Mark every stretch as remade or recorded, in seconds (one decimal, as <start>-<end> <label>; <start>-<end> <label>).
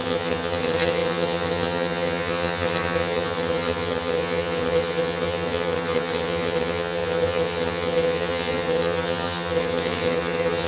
0.0-10.7 remade